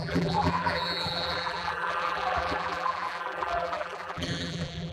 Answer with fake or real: fake